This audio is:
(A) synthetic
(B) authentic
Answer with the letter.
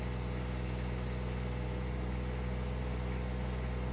B